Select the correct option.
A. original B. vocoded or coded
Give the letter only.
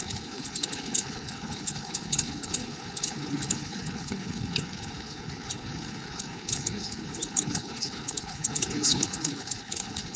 B